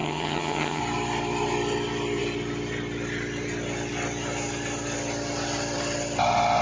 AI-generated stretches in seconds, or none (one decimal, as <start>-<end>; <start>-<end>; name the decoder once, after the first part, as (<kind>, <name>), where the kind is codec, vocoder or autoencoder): 0.0-0.8 (vocoder, HiFi-GAN)